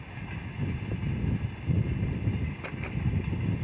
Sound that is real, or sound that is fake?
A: real